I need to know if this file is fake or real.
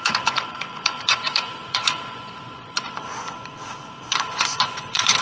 fake